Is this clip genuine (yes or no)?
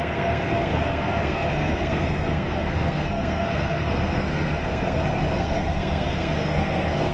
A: no